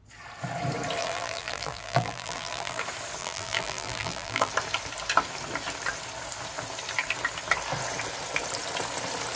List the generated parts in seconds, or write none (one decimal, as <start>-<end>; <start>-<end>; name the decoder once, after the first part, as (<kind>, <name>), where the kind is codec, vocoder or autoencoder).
1.0-2.8 (vocoder, BigVGAN v2); 3.2-4.5